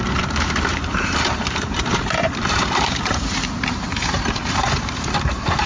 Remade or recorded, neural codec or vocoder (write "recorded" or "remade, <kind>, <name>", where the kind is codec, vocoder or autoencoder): remade, vocoder, BigVGAN v2